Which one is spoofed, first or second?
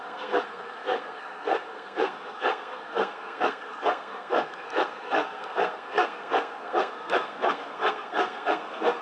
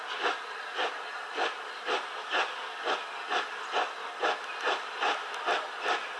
first